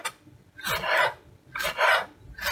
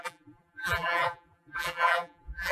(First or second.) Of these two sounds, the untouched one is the first